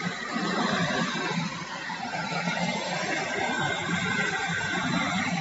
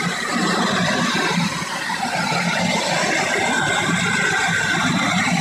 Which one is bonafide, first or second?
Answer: second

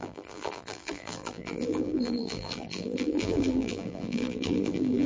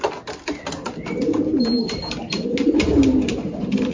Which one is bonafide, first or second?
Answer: second